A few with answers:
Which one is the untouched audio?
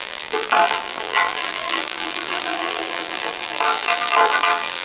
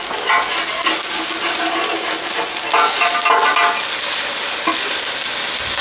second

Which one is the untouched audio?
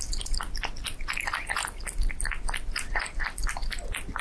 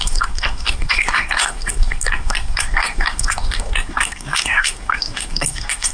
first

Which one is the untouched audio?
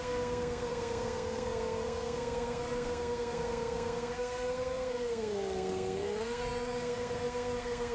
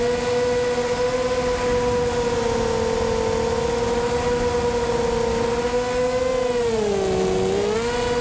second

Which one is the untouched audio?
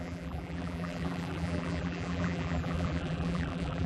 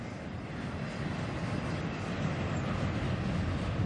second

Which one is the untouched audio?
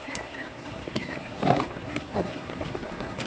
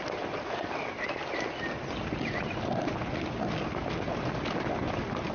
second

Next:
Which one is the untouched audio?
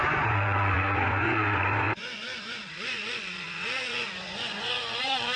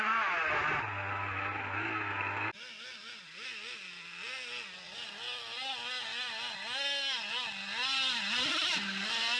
second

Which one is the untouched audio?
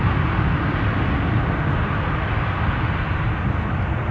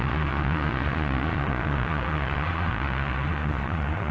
first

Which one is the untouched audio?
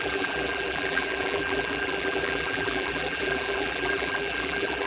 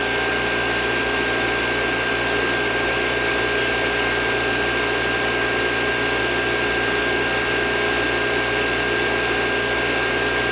second